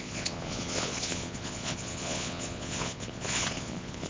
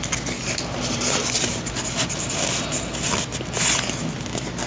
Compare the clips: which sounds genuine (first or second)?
second